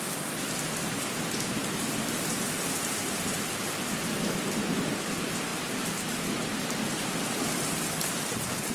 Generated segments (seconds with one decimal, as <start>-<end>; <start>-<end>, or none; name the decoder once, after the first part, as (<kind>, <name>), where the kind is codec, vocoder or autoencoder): 0.0-5.5 (vocoder, BigVGAN v2); 7.8-8.7